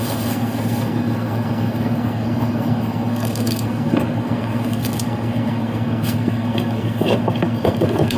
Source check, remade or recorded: remade